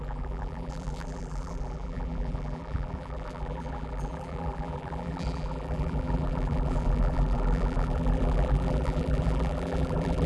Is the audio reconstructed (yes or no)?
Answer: yes